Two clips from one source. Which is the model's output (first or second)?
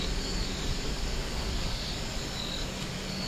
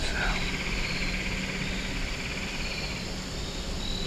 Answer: first